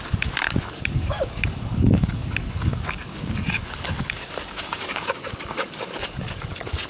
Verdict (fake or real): fake